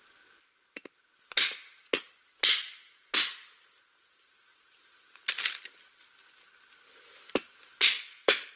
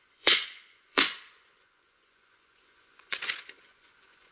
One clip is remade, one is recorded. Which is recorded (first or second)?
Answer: first